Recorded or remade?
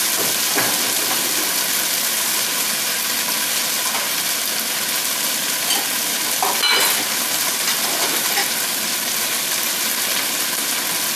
recorded